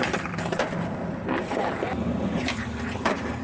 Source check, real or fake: fake